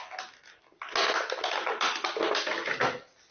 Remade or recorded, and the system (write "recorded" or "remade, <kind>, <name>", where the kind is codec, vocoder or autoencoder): recorded